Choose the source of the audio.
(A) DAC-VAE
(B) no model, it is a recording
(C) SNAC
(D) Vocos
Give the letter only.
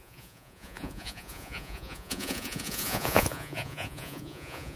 D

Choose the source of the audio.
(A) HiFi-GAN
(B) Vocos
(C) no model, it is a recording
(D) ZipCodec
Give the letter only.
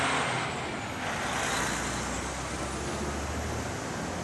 C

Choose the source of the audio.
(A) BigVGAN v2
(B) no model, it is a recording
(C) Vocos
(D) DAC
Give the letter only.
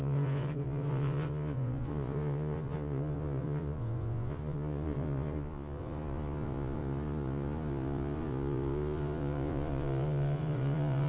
C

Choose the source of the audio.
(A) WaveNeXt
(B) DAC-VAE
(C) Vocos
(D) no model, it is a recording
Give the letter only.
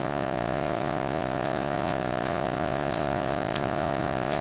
C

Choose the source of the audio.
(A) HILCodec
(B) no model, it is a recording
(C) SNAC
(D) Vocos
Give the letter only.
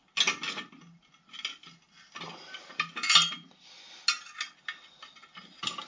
B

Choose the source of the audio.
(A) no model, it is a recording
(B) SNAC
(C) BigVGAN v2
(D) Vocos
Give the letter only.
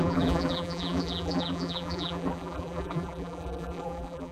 C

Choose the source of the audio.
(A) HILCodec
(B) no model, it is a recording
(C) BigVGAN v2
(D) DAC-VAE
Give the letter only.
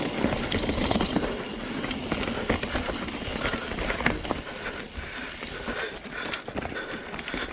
B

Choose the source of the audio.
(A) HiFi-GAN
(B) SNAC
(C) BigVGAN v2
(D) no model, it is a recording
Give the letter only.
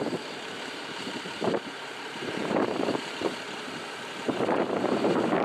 C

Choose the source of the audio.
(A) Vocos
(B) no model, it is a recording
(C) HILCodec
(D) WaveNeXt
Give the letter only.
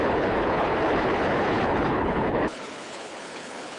C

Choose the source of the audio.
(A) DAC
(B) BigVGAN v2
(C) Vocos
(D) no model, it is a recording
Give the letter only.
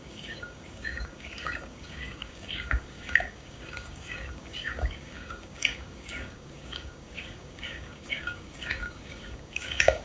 A